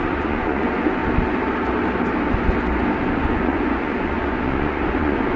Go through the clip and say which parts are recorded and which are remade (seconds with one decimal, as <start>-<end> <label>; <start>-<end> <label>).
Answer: 0.0-1.0 remade; 1.0-3.0 recorded; 3.0-5.4 remade